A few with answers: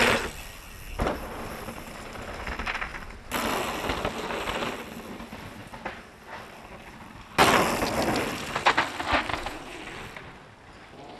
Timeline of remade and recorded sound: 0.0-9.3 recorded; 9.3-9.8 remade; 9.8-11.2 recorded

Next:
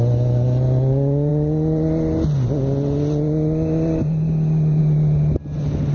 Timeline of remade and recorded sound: 0.0-5.9 recorded

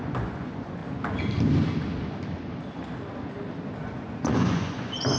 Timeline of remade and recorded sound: 0.0-0.8 remade; 0.8-3.8 recorded; 3.8-5.2 remade

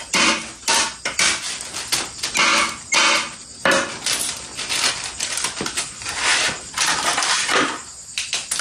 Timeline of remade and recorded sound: 0.0-8.6 recorded

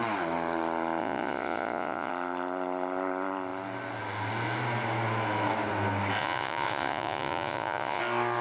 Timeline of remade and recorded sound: 0.0-1.0 recorded; 1.0-2.1 remade; 2.1-6.2 recorded; 6.2-8.0 remade; 8.0-8.4 recorded

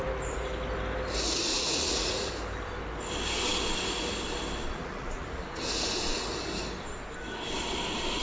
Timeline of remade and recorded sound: 0.0-1.5 recorded; 1.5-2.3 remade; 2.3-4.7 recorded; 4.7-5.6 remade; 5.6-8.2 recorded

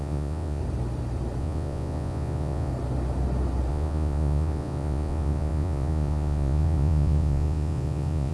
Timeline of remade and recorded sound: 0.0-0.6 remade; 0.6-1.4 recorded; 1.4-2.7 remade; 2.7-3.7 recorded; 3.7-8.3 remade

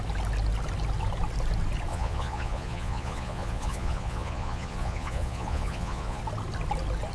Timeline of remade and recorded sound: 0.0-1.9 recorded; 1.9-6.2 remade; 6.2-7.1 recorded